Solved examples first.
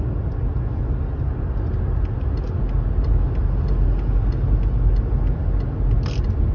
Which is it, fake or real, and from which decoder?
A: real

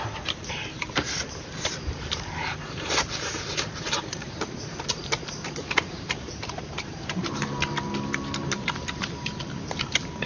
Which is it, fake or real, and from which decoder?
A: fake, vocoder, BigVGAN v2